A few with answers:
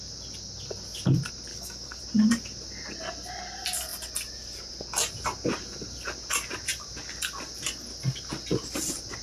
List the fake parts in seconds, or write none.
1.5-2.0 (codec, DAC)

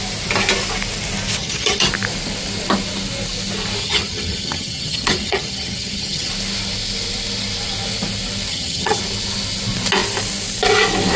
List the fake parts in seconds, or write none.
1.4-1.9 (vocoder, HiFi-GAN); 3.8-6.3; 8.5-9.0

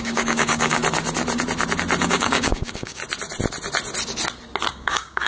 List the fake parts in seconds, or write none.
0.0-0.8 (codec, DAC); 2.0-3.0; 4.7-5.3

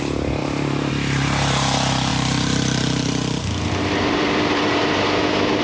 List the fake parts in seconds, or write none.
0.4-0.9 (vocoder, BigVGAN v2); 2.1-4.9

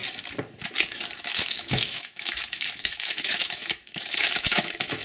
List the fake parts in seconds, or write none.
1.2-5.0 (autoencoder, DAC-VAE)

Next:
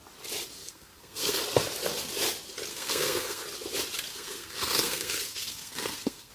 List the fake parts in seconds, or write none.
0.6-1.4 (codec, SNAC); 2.7-3.4; 4.1-6.3

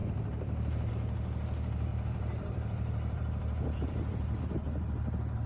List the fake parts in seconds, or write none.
0.0-0.9 (vocoder, BigVGAN v2); 1.9-4.4